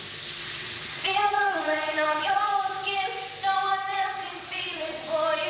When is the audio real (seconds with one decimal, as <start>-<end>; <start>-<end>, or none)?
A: 0.0-0.4; 2.5-3.9; 5.0-5.5